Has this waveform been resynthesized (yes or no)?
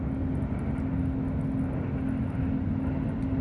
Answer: no